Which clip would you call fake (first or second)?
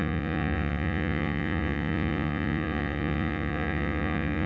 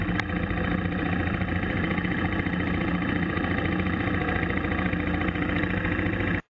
first